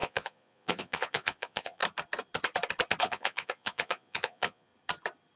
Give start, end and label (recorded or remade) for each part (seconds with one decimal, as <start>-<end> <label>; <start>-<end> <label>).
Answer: 0.0-1.8 remade; 1.8-3.0 recorded; 3.0-4.7 remade; 4.7-5.4 recorded